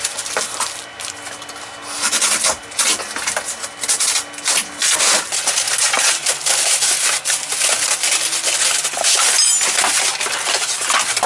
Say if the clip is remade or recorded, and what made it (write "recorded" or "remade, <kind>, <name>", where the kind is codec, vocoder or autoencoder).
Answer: recorded